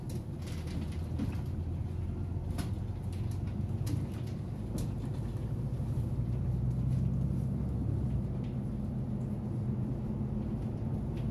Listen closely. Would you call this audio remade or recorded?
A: recorded